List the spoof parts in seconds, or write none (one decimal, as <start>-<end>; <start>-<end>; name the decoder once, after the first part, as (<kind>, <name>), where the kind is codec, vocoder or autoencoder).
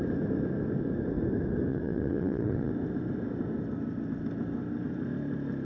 1.7-2.7 (vocoder, Vocos)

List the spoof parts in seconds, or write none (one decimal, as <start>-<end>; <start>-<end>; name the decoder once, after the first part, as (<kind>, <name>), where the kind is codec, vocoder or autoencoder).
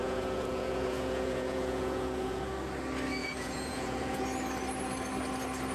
0.0-2.4 (vocoder, Vocos); 3.2-4.2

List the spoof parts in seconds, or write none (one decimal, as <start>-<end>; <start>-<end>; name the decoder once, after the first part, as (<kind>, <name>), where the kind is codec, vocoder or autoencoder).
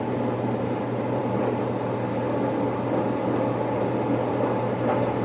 none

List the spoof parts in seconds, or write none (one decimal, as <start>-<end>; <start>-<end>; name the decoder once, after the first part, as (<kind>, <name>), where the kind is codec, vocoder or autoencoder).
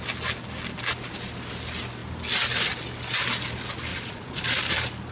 3.9-4.4 (vocoder, Vocos)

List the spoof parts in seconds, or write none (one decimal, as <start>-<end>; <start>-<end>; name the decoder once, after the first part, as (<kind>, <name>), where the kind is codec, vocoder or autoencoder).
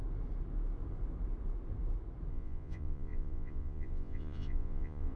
2.3-5.2 (vocoder, Vocos)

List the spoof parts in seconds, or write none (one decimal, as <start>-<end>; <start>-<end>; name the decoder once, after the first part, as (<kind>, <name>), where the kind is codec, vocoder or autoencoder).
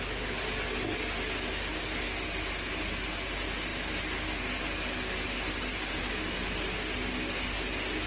none